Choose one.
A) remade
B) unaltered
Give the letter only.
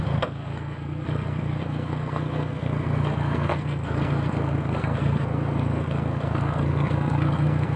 A